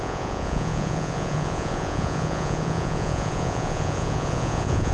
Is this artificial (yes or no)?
yes